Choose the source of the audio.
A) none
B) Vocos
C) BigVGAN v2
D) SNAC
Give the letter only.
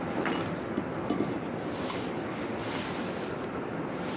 A